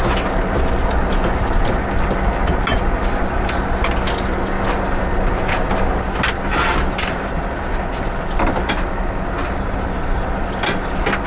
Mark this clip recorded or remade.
recorded